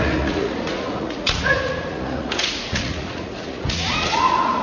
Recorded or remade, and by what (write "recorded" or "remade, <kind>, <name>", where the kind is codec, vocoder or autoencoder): remade, vocoder, Vocos